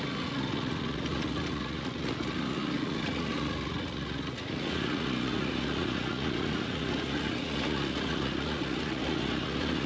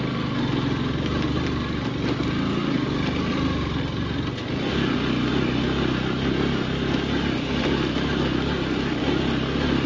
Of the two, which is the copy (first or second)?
first